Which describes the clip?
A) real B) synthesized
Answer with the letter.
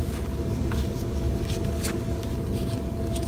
B